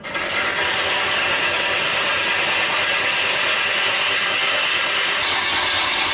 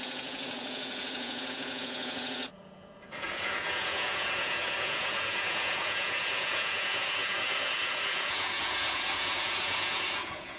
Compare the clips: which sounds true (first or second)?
first